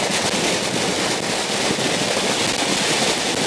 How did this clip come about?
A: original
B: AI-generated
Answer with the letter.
A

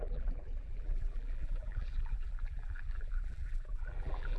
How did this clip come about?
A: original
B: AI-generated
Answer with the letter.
B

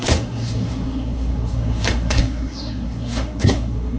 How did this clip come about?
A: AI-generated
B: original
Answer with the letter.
A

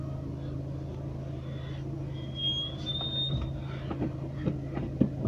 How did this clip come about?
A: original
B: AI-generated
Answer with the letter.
A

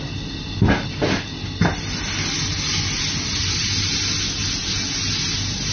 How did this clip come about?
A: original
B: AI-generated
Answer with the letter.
A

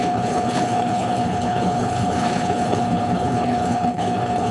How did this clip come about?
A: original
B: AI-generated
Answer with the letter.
B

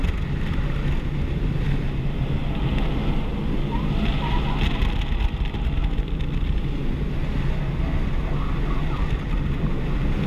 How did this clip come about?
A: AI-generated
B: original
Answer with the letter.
B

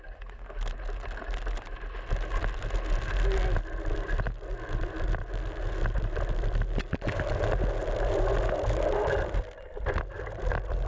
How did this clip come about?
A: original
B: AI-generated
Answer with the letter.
A